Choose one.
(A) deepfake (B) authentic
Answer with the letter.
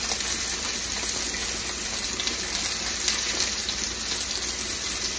B